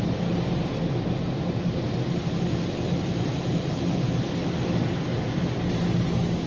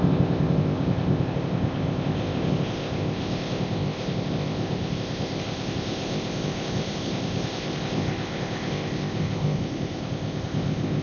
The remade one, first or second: second